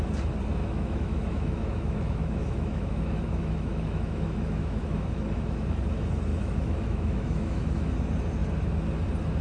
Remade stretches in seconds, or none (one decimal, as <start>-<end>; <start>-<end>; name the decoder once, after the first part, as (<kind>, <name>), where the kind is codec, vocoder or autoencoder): 0.6-5.8 (autoencoder, DAC-VAE); 6.3-7.9